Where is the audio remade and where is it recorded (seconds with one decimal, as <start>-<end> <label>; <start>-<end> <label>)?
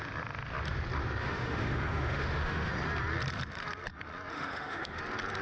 0.0-1.2 recorded; 1.2-2.7 remade; 2.7-4.3 recorded; 4.3-5.0 remade; 5.0-5.4 recorded